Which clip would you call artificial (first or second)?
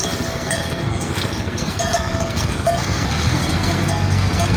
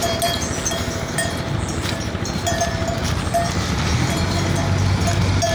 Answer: first